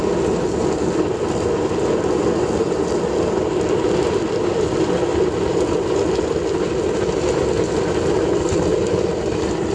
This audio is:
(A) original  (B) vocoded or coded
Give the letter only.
A